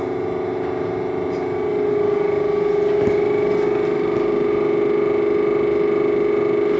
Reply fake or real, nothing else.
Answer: real